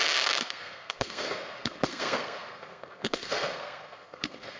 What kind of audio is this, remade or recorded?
remade